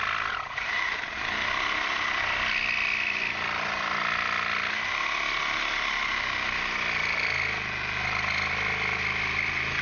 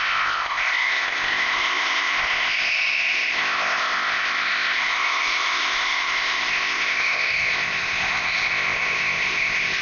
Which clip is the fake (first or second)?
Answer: second